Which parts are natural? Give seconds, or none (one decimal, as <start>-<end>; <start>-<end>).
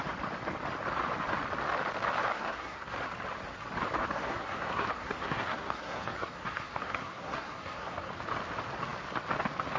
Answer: 0.0-2.3; 2.9-4.0; 8.1-9.8